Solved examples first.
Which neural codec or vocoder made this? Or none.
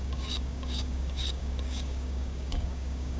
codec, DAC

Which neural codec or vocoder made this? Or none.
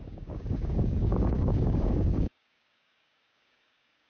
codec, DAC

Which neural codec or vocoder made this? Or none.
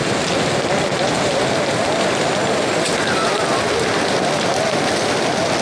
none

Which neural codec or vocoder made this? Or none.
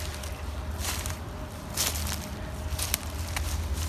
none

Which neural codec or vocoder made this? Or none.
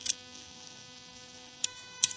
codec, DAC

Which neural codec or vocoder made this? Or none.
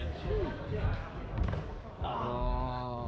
codec, DAC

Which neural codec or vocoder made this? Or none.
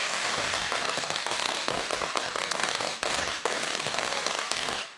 codec, DAC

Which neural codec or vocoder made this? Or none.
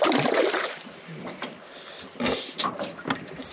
none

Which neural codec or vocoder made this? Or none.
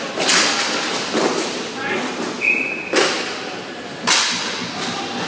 none